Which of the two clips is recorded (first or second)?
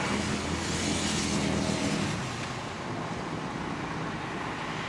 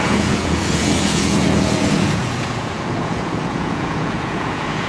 first